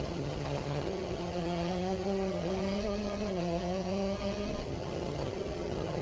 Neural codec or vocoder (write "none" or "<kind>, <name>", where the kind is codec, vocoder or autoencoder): vocoder, HiFi-GAN